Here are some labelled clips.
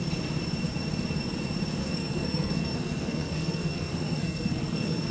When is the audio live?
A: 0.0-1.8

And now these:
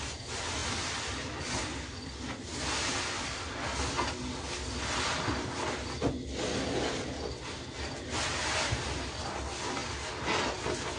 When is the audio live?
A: 0.0-11.0

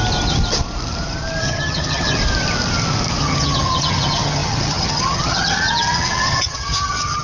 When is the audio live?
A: 0.0-1.4; 2.2-3.2